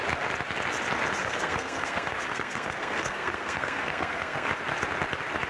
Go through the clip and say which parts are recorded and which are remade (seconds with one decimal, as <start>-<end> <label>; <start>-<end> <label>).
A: 0.0-1.2 recorded; 1.2-4.5 remade; 4.5-5.5 recorded